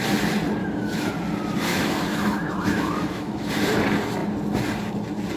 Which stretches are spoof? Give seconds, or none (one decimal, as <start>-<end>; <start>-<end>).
0.6-1.1; 1.7-3.5